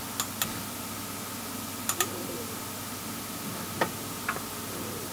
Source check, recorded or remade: recorded